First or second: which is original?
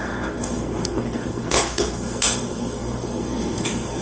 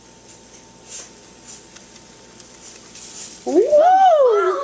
second